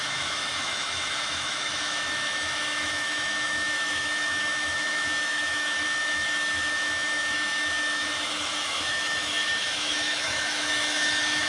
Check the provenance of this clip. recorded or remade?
remade